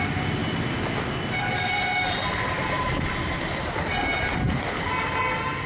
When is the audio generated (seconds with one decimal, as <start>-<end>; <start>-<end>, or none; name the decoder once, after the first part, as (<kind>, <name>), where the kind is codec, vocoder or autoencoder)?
none